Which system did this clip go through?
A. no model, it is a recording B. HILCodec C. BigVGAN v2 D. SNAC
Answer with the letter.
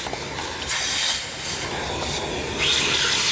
A